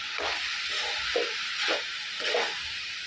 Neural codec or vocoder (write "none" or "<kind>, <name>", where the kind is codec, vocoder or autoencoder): none